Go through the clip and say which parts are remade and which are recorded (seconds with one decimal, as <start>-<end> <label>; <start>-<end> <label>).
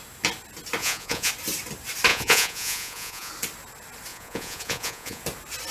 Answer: 0.0-0.8 recorded; 0.8-1.3 remade; 1.3-2.1 recorded; 2.1-3.3 remade; 3.3-4.1 recorded; 4.1-5.2 remade; 5.2-5.7 recorded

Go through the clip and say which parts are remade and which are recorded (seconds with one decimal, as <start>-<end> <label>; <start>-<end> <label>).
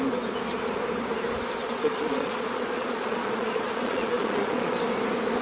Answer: 0.0-1.6 recorded; 1.6-4.8 remade; 4.8-5.4 recorded